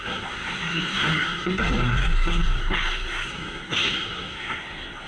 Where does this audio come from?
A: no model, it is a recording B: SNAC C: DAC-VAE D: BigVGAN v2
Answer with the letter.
B